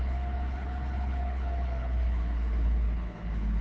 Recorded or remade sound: remade